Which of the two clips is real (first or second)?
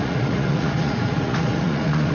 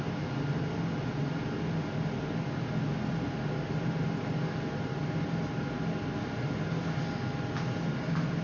second